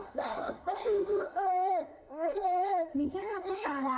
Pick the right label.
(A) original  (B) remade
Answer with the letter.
B